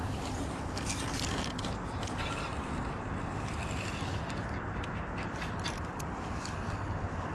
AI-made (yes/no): no